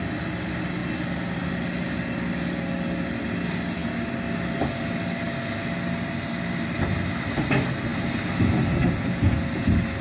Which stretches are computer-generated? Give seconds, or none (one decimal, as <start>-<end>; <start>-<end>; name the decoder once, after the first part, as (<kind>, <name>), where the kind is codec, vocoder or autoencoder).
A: none